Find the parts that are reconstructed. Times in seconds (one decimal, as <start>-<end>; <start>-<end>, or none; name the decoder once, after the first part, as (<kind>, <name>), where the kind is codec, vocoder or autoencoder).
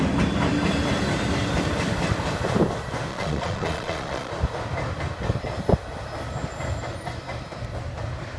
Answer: 3.1-4.3 (vocoder, Vocos)